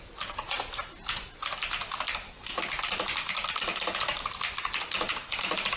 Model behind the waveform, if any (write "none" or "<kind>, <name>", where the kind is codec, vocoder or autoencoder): none